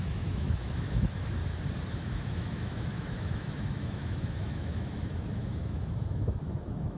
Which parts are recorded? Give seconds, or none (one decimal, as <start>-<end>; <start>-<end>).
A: 1.4-1.9